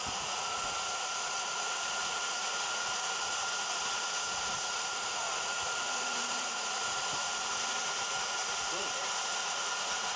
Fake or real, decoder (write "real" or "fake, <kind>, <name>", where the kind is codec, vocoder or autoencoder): fake, vocoder, Vocos